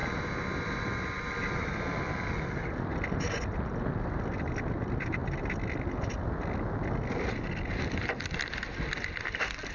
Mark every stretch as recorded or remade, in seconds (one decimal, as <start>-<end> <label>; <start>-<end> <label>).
0.0-9.7 recorded